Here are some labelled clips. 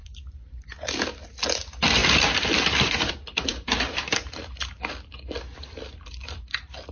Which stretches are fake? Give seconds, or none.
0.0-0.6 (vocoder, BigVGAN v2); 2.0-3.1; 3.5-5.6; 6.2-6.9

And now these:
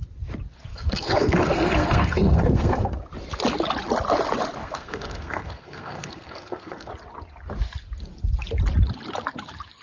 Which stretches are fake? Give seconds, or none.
0.7-3.0 (codec, SNAC); 4.6-6.9

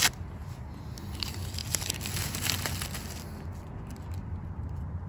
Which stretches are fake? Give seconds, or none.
none

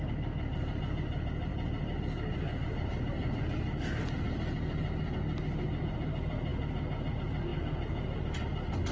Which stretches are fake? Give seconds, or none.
none

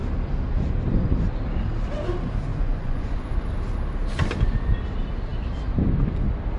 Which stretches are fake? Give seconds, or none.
2.5-3.3 (vocoder, Vocos)